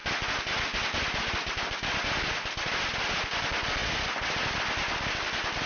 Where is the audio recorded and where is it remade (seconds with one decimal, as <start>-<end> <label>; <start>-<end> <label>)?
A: 0.0-5.7 recorded